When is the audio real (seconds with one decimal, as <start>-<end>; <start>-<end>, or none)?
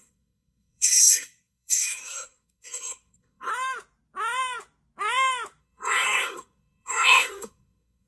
3.5-5.6